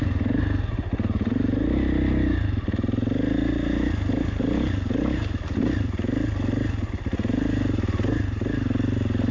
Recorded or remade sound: recorded